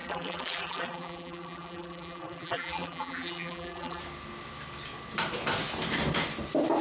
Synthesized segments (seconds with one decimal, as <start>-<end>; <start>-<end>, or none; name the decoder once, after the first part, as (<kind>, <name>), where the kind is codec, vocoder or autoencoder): 0.0-4.0 (vocoder, BigVGAN v2)